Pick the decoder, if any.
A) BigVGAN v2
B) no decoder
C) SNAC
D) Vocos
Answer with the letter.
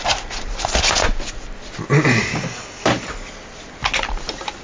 B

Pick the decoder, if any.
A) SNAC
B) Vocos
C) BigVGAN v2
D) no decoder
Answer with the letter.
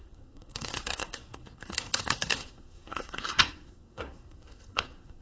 A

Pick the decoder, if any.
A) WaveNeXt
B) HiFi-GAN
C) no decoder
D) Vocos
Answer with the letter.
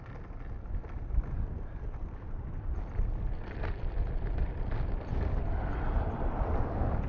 C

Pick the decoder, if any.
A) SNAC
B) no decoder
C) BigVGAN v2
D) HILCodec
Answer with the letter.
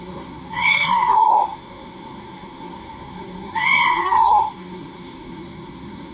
A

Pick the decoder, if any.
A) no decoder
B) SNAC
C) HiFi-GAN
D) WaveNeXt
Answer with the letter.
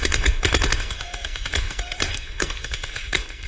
B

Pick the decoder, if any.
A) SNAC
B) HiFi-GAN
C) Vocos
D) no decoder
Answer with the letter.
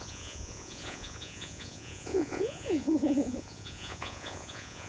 C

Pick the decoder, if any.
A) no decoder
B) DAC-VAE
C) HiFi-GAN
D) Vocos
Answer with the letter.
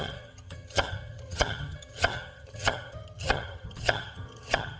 C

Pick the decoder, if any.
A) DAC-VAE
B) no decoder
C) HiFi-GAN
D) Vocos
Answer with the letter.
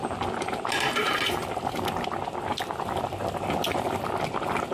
B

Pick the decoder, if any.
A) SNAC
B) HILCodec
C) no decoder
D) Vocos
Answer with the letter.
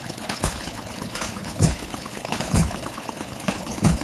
B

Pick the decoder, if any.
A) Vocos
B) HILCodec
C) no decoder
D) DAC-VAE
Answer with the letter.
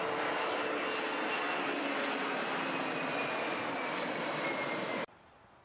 C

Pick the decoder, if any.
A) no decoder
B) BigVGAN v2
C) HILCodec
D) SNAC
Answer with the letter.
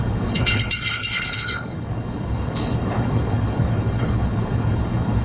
C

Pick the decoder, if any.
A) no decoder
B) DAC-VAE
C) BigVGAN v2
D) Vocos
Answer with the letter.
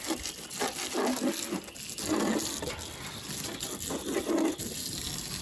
A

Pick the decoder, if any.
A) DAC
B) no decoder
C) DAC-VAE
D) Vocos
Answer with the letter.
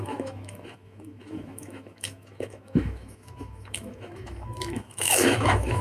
C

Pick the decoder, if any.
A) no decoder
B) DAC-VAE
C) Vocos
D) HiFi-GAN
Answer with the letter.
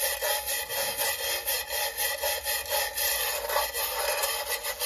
A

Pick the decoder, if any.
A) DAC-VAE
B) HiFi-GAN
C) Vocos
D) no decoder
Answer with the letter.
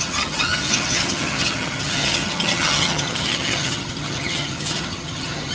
B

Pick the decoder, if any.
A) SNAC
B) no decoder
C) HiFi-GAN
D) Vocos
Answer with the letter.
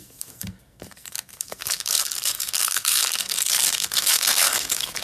A